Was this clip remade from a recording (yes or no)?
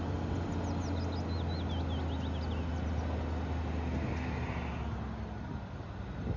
no